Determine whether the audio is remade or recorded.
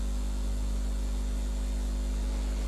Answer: recorded